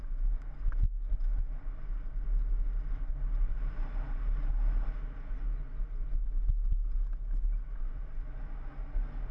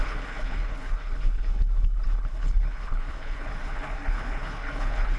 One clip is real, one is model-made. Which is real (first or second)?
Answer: first